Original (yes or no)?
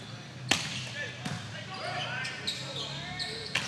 yes